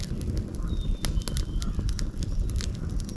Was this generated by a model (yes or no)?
no